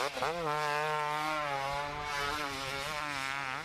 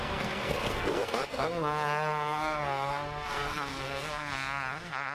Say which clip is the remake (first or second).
second